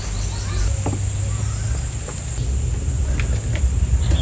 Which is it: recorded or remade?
recorded